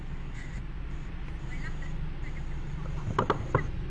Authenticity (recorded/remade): recorded